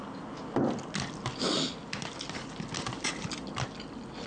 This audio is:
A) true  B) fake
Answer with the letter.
A